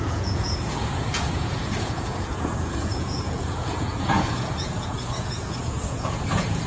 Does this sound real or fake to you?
fake